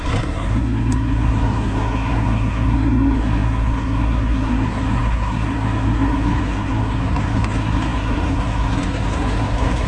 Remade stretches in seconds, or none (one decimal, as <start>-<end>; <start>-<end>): 0.0-9.9

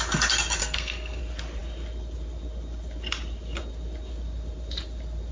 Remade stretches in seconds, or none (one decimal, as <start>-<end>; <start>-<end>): 0.6-1.2

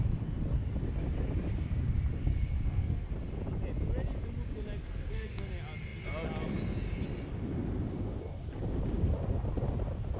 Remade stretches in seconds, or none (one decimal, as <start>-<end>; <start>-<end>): 2.3-3.1; 4.8-5.5

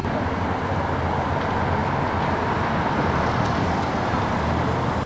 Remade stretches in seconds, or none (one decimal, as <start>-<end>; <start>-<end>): none

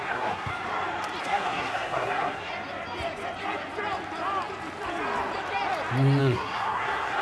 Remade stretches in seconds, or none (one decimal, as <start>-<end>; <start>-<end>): 0.0-0.5; 1.2-2.5; 6.2-7.2

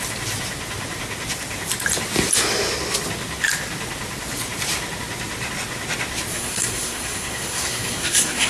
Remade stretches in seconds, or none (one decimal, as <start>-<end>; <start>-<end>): 6.3-8.5